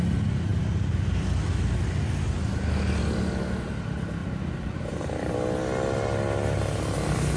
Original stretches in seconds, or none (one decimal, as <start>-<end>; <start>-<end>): 0.0-4.2; 5.3-7.4